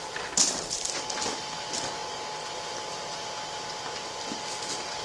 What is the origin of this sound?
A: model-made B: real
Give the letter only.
B